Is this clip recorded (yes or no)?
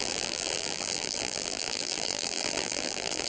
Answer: no